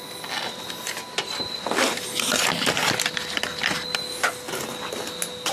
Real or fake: real